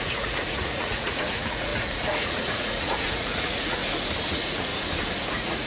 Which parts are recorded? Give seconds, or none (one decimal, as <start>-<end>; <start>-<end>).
3.8-4.3; 4.7-5.3